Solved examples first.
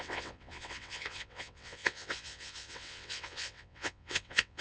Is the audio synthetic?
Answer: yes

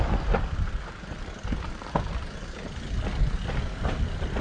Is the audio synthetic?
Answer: no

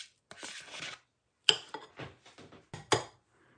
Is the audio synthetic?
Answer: no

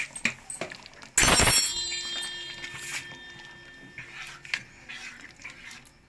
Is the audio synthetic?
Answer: no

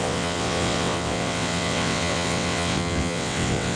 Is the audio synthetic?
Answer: yes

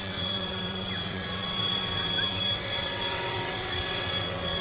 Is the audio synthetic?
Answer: yes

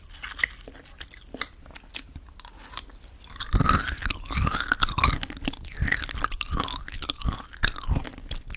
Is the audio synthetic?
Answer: no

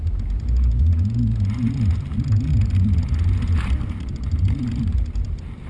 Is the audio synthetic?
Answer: no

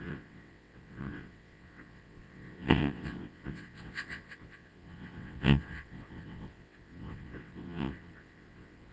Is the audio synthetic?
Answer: yes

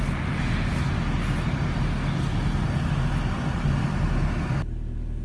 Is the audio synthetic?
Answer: no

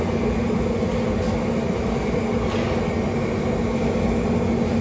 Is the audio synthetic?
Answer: no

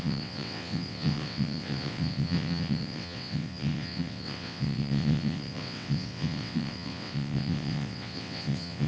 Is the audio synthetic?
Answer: yes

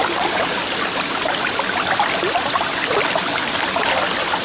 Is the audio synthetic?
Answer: no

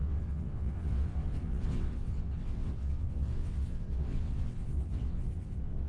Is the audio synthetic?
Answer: yes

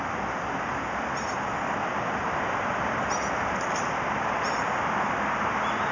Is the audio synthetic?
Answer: no